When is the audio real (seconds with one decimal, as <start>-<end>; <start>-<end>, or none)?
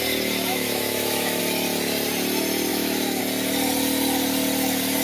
0.0-0.5; 1.4-2.7; 3.2-5.0